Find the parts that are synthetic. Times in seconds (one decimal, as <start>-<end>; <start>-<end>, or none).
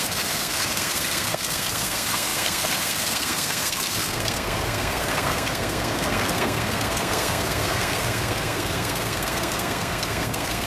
0.0-10.7